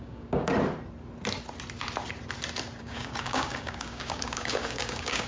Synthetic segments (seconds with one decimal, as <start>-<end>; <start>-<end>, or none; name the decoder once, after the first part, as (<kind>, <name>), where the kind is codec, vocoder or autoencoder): 0.0-0.5 (codec, DAC); 2.8-5.3